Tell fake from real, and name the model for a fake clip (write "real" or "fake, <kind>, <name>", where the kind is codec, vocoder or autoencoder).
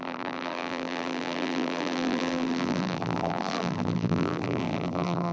fake, vocoder, BigVGAN v2